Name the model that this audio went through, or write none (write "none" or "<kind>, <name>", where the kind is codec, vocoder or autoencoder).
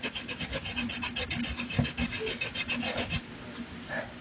none